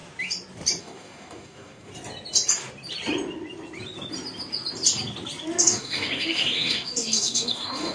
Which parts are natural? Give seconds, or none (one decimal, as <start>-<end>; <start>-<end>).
0.0-0.8; 1.9-5.6